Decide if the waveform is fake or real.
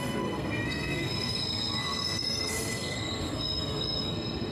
fake